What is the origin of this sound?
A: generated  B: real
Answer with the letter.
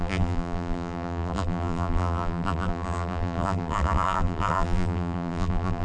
A